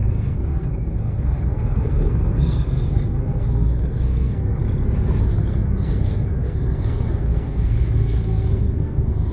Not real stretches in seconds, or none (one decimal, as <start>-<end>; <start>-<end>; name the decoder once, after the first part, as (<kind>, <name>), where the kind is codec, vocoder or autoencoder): 0.0-4.6 (codec, SNAC); 5.2-9.3